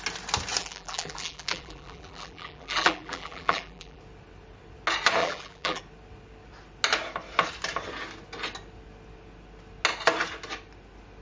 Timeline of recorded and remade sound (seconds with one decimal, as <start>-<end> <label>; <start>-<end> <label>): 0.0-0.6 recorded; 0.6-4.0 remade; 4.0-5.2 recorded; 5.2-5.8 remade; 5.8-11.2 recorded